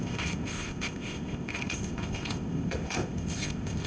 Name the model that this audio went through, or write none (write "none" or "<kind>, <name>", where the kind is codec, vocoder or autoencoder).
codec, ZipCodec